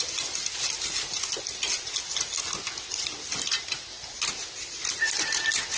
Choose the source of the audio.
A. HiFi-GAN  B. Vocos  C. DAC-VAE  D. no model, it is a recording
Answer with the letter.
D